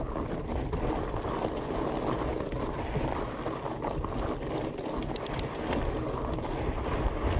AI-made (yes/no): no